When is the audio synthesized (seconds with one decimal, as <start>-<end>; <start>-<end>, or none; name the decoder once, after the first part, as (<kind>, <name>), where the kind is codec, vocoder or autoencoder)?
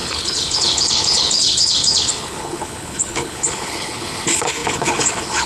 0.0-5.5 (codec, HILCodec)